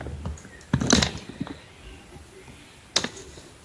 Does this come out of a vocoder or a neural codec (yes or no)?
no